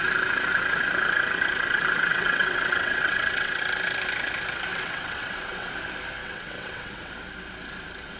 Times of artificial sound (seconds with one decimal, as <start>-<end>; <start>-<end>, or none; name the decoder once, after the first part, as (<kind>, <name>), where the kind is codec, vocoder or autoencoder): 2.1-3.6 (vocoder, WaveNeXt); 4.7-5.7; 6.2-7.1